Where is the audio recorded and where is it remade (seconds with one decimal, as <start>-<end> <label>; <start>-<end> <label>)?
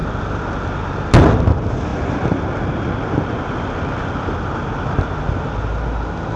0.0-6.4 recorded